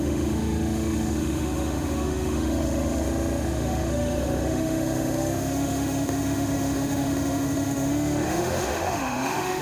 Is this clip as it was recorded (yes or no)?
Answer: no